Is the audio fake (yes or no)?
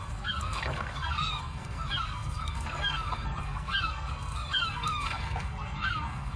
yes